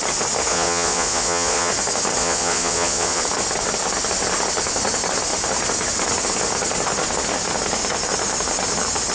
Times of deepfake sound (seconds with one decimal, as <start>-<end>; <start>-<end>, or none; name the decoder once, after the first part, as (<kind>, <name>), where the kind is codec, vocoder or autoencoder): 0.5-1.7 (vocoder, Vocos); 2.2-3.2

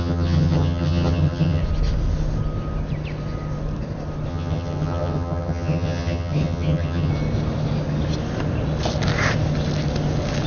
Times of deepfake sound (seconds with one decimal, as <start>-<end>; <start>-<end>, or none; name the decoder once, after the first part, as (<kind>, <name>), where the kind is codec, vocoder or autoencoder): 0.0-1.6 (vocoder, HiFi-GAN); 4.3-7.1

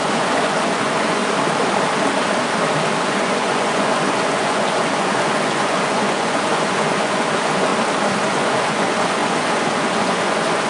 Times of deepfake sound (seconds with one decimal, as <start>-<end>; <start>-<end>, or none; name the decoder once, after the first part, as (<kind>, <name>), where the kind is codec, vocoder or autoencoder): 0.0-1.2 (vocoder, Vocos); 3.0-7.7; 8.2-10.7

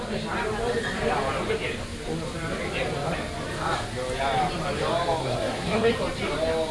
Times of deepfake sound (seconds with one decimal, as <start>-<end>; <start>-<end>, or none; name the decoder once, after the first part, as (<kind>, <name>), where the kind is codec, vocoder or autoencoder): 5.2-5.9 (codec, SNAC)

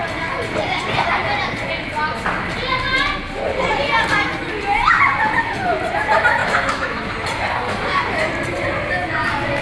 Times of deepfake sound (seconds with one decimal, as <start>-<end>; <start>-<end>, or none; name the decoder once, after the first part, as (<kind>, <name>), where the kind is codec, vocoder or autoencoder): 6.4-7.1 (autoencoder, DAC-VAE)

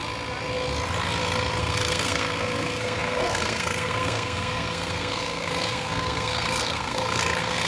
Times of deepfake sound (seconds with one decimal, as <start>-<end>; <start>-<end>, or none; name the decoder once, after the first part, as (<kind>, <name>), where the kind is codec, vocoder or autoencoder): 1.6-7.7 (codec, SNAC)